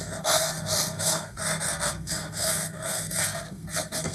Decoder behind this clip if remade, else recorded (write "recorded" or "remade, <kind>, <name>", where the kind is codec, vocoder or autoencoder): remade, codec, SNAC